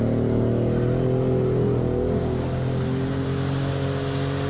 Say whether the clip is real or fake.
real